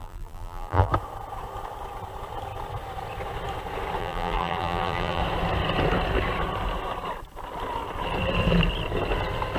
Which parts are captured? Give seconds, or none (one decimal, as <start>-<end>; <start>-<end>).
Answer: 0.9-4.0; 5.2-9.6